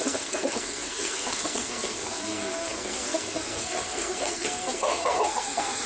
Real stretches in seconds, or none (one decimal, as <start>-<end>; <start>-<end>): none